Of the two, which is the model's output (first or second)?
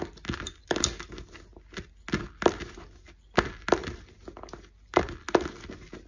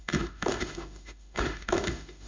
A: second